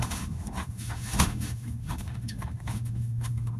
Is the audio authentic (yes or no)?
no